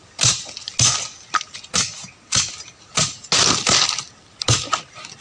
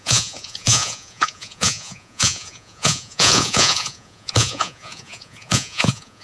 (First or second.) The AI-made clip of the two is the second